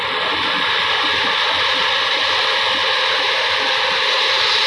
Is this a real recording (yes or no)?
no